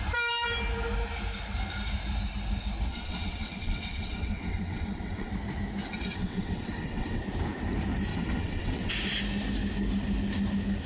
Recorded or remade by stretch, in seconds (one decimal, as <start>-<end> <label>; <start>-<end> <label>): 0.0-2.9 recorded; 2.9-5.3 remade; 5.3-5.9 recorded; 5.9-7.2 remade; 7.2-8.1 recorded; 8.1-8.9 remade; 8.9-10.9 recorded